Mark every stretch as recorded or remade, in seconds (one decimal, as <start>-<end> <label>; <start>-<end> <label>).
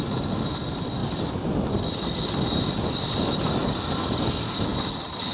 0.0-1.0 recorded; 1.0-2.3 remade; 2.3-5.3 recorded